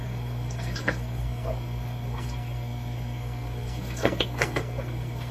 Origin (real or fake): fake